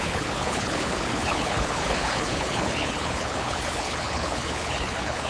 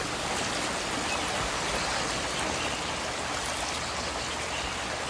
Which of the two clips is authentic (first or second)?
second